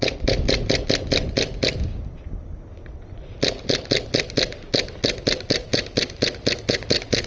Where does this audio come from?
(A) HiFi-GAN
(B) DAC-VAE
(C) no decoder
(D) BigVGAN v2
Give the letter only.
C